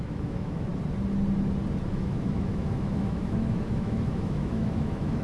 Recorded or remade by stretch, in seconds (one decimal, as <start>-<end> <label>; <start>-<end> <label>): 0.0-0.7 remade; 0.7-1.9 recorded; 1.9-5.2 remade